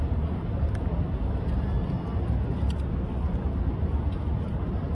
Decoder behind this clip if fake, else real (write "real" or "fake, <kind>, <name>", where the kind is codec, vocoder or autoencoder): real